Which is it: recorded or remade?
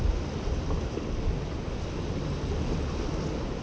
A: recorded